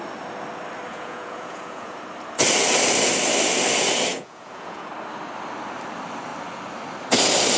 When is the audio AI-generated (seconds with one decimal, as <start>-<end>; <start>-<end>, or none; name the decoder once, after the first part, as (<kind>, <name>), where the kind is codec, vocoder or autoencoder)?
0.9-2.0 (vocoder, Vocos); 4.1-4.9